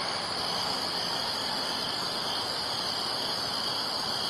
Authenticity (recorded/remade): recorded